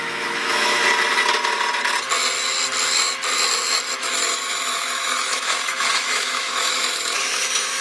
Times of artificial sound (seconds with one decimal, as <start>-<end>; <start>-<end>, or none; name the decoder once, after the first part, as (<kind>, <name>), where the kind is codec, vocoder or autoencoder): 0.0-0.8 (autoencoder, DAC-VAE); 4.0-7.8